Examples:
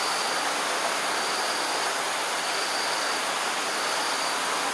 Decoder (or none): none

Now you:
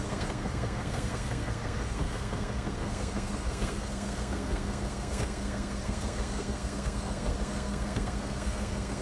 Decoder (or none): codec, SNAC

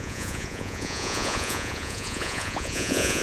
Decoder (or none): vocoder, Vocos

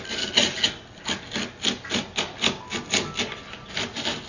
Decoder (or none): none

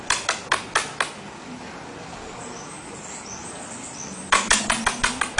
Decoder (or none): none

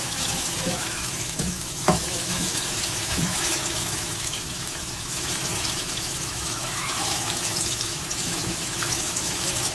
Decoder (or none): autoencoder, DAC-VAE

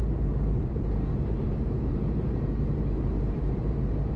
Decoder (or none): vocoder, BigVGAN v2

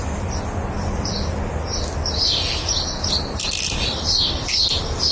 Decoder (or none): none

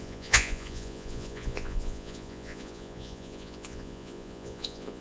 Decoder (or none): vocoder, Vocos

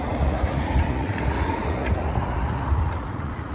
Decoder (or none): vocoder, Vocos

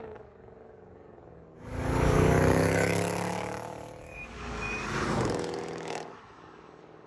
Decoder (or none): codec, DAC